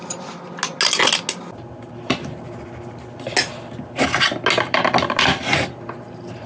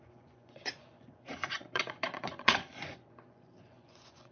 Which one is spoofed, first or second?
second